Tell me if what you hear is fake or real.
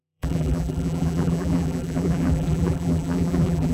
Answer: fake